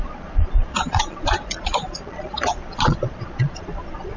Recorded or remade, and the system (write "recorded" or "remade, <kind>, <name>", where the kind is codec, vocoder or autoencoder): remade, vocoder, Vocos